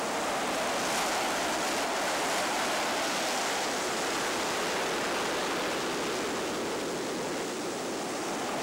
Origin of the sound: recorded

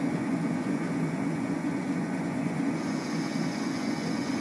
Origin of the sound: remade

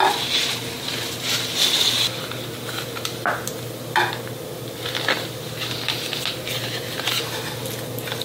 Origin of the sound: recorded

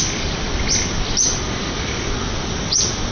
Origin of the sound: recorded